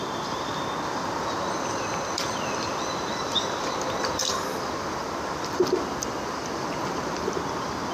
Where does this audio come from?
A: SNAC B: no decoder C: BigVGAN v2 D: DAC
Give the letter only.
B